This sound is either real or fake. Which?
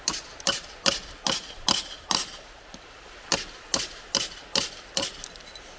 real